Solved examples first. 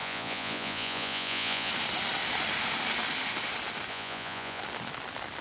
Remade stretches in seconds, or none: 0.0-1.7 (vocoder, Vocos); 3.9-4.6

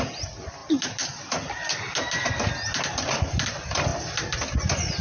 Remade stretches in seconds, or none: none